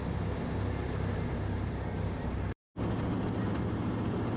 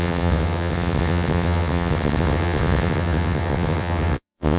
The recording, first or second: first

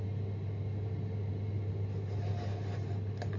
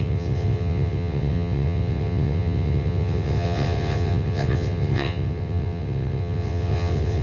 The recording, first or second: first